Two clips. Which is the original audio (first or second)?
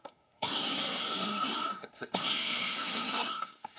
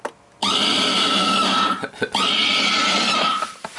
second